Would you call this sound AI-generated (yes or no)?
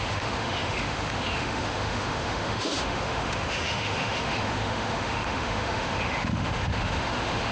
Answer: yes